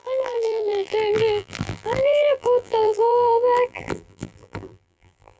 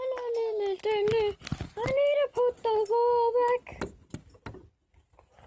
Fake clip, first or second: first